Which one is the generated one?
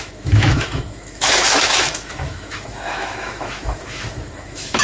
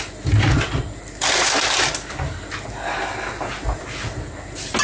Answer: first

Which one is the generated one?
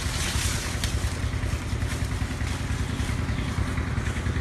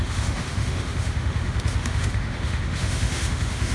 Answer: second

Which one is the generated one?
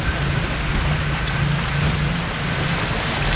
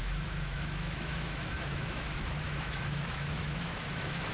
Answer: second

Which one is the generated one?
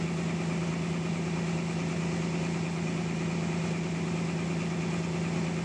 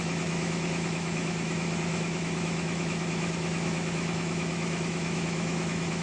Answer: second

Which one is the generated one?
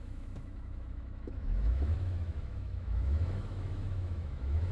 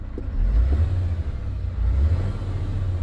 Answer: first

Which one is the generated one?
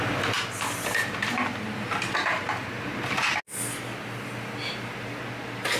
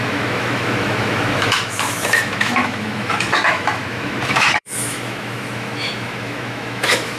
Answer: second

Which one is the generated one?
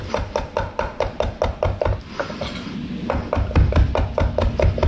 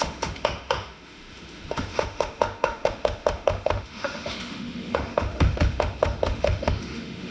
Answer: second